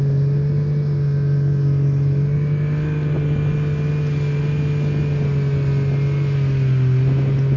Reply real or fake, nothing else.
real